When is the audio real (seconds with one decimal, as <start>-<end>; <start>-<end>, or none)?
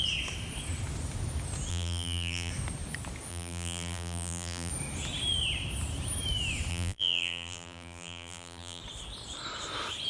0.0-1.7; 2.5-3.3; 4.7-6.7; 8.8-10.1